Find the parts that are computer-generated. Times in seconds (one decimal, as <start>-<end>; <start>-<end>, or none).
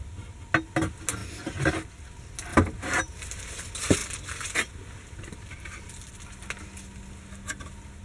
1.2-1.7; 2.5-3.5